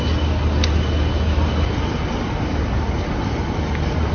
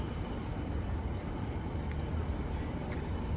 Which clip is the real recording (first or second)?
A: first